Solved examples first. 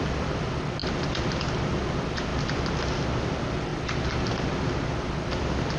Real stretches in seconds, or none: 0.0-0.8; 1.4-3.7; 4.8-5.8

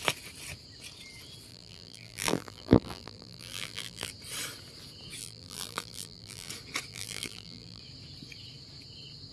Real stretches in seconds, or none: 0.0-1.5; 4.1-5.2; 6.5-6.9; 7.8-9.3

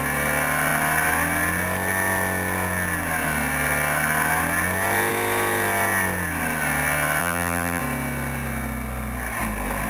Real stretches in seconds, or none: 0.0-7.2; 7.8-9.9

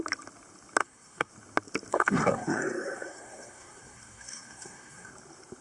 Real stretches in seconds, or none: 0.0-0.8; 1.3-1.9; 5.1-5.6